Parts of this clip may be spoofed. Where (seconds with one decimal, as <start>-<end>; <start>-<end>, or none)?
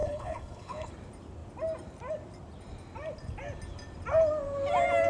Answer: 0.0-0.9